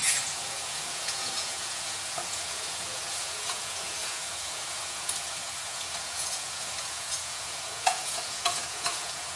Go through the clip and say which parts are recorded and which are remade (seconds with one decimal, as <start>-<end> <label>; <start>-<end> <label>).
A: 0.0-9.4 remade